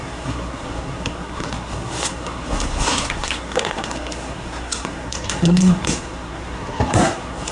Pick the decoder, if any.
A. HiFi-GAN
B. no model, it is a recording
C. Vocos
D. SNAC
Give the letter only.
D